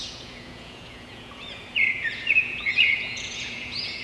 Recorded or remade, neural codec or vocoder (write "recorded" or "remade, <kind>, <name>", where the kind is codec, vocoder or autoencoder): remade, vocoder, Vocos